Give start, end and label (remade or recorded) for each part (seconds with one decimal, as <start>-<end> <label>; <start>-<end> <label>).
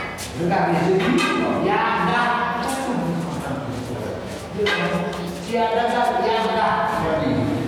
0.0-4.2 recorded; 4.2-5.3 remade; 5.3-7.7 recorded